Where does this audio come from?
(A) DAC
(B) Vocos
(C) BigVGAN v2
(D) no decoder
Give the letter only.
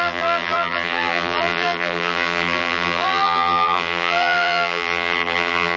C